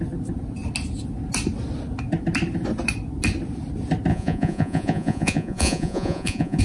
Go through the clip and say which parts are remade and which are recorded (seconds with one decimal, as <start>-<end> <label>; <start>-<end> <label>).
0.0-4.1 recorded; 4.1-6.6 remade